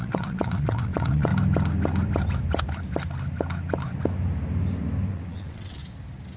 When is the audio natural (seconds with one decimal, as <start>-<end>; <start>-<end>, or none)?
1.3-5.1; 5.8-6.4